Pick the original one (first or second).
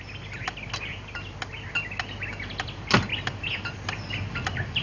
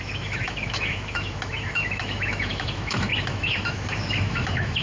first